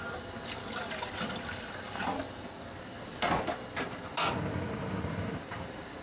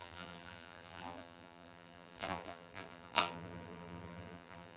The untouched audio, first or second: first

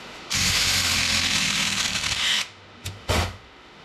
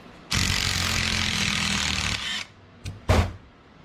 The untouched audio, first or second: second